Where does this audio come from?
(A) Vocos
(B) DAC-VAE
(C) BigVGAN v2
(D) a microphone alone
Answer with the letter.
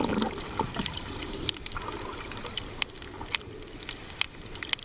D